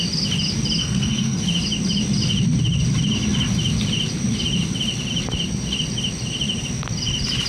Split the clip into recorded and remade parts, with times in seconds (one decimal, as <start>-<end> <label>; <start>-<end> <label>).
0.0-0.8 recorded; 0.8-1.4 remade; 1.4-7.5 recorded